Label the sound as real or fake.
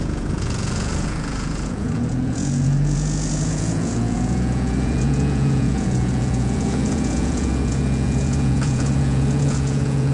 fake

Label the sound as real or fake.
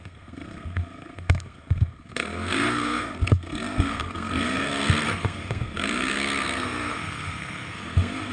fake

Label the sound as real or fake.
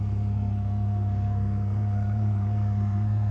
fake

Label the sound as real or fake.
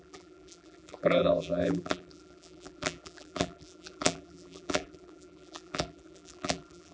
fake